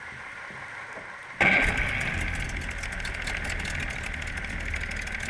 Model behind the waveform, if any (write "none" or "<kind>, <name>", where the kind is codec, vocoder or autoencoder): none